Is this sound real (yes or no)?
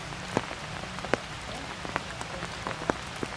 yes